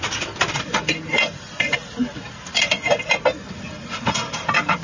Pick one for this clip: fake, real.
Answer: real